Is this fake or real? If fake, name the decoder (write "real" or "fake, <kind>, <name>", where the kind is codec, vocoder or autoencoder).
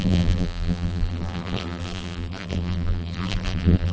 fake, vocoder, BigVGAN v2